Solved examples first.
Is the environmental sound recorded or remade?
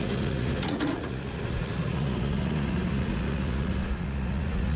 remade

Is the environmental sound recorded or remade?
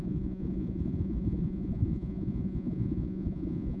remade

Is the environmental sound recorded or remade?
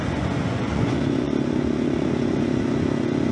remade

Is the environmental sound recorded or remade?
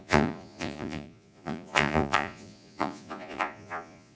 remade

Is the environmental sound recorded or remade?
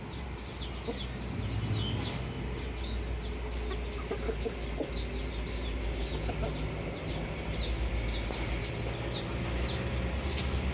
recorded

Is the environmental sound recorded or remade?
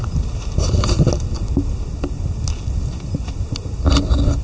recorded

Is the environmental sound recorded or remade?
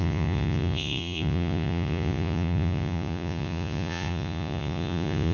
remade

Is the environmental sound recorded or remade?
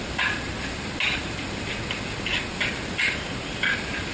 recorded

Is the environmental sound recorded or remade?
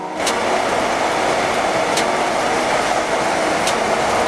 recorded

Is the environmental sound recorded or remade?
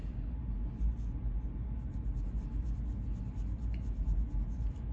recorded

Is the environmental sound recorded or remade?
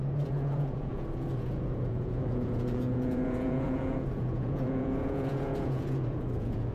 remade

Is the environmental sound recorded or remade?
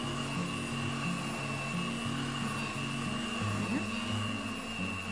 recorded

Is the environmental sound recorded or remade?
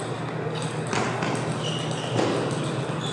recorded